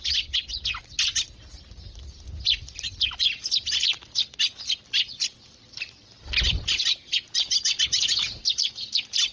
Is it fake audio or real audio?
real